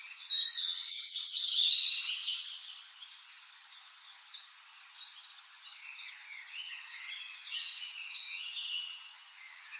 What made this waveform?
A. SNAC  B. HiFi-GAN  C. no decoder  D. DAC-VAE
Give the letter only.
B